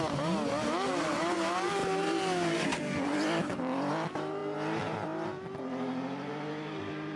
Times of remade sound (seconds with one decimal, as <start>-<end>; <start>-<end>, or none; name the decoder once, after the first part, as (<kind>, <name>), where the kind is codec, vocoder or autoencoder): none